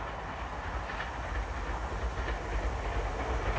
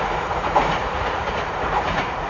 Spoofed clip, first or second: second